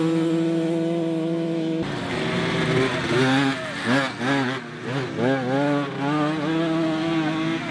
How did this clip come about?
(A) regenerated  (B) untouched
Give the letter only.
B